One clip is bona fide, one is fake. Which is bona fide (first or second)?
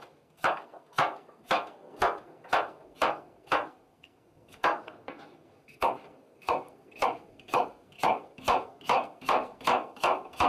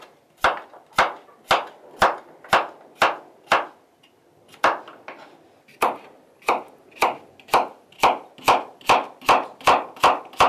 second